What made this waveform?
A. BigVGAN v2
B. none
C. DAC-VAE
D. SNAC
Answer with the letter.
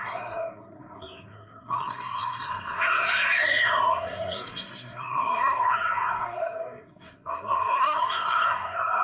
D